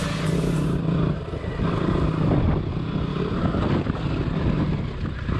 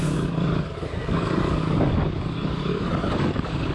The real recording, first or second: first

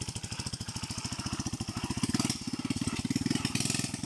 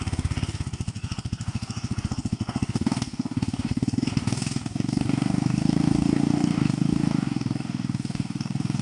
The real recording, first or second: first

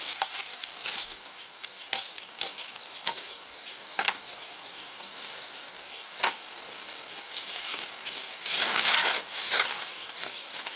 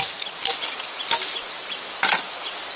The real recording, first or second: second